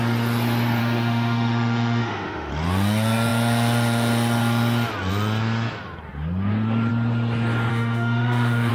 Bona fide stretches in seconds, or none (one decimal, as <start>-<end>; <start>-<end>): 0.0-0.8; 2.5-7.7